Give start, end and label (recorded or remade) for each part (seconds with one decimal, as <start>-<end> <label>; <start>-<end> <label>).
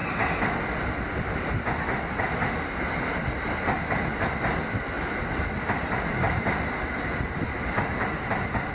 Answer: 0.0-7.6 recorded; 7.6-8.1 remade; 8.1-8.7 recorded